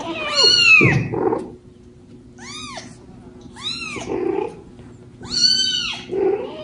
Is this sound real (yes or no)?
yes